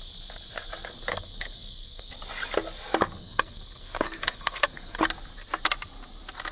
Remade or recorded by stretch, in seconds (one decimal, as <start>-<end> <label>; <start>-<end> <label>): 0.0-1.1 recorded; 1.1-2.1 remade; 2.1-3.2 recorded; 3.2-5.0 remade; 5.0-6.5 recorded